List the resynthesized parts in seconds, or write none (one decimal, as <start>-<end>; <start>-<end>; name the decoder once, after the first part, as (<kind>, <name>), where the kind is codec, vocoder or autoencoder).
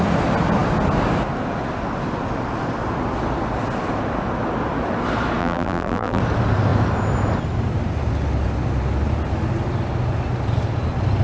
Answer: 5.4-6.2 (vocoder, BigVGAN v2)